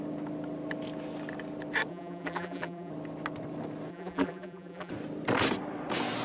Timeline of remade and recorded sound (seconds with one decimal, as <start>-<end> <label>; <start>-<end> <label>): 0.0-1.9 recorded; 1.9-2.9 remade; 2.9-3.9 recorded; 3.9-4.9 remade; 4.9-6.2 recorded